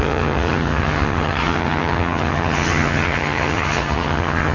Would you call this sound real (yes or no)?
no